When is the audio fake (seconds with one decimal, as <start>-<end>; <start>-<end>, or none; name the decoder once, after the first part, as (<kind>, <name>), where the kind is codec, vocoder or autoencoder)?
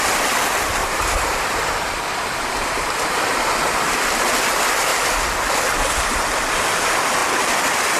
0.8-3.5 (vocoder, BigVGAN v2)